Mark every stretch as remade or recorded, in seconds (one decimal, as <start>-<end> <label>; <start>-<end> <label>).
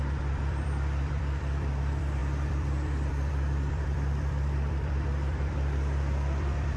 0.0-6.8 remade